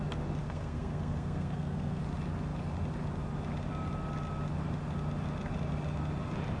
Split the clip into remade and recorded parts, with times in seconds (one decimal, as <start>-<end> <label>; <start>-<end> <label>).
0.0-0.4 recorded; 0.4-2.0 remade; 2.0-6.6 recorded